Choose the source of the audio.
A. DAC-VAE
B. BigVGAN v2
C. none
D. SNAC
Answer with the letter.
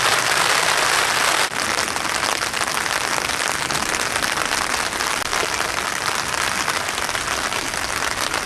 C